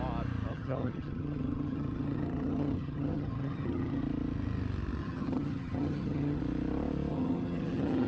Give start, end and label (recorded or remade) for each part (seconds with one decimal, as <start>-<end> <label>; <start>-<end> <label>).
0.0-0.5 recorded; 0.5-4.0 remade; 4.0-5.0 recorded; 5.0-6.4 remade; 6.4-7.1 recorded; 7.1-8.1 remade

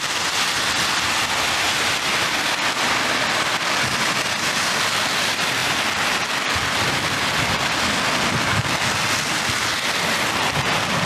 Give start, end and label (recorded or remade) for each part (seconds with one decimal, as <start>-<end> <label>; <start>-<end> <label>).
0.0-11.1 recorded

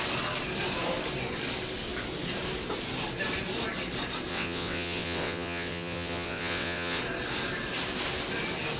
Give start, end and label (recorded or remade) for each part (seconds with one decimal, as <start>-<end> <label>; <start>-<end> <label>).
0.0-4.3 recorded; 4.3-7.0 remade; 7.0-8.8 recorded

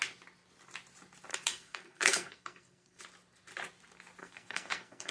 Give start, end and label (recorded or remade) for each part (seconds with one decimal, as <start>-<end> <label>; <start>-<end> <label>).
0.0-1.3 recorded; 1.3-3.0 remade; 3.0-4.2 recorded; 4.2-5.1 remade

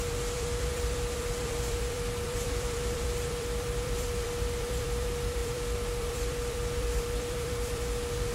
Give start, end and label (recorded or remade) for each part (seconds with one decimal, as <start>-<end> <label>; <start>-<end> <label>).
0.0-8.3 remade

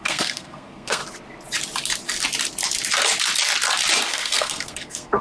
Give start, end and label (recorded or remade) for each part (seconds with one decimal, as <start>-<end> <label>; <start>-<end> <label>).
0.0-1.0 remade; 1.0-4.1 recorded; 4.1-5.2 remade

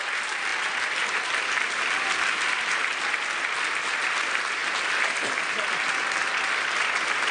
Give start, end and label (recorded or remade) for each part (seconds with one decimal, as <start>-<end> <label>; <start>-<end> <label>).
0.0-7.3 recorded

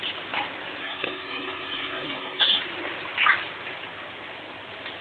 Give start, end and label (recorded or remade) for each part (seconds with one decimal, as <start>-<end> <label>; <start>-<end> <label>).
0.0-0.8 recorded; 0.8-2.6 remade; 2.6-5.0 recorded